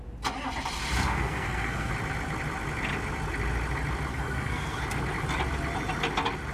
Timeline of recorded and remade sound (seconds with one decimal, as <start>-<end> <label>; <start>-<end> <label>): 0.0-1.0 recorded; 1.0-1.9 remade; 1.9-4.1 recorded; 4.1-4.8 remade; 4.8-6.5 recorded